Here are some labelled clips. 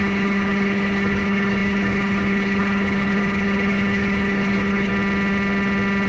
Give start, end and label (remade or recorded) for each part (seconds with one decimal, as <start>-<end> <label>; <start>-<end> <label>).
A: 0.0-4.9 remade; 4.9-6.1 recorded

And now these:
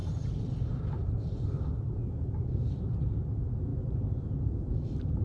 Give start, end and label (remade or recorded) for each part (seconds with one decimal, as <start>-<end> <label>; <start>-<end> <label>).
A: 0.0-5.2 recorded

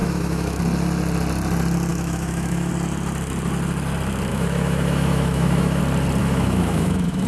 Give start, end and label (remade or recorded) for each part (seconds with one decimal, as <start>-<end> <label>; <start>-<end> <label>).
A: 0.0-0.6 remade; 0.6-1.9 recorded; 1.9-2.7 remade; 2.7-4.3 recorded; 4.3-5.8 remade; 5.8-6.2 recorded; 6.2-7.3 remade